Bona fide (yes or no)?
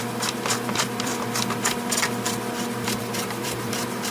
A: no